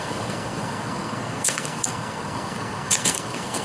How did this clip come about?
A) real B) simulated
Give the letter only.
B